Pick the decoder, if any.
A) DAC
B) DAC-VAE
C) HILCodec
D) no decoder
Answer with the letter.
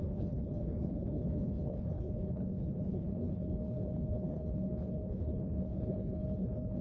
C